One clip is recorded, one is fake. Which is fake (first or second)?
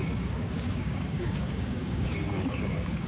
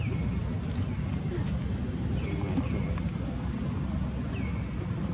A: first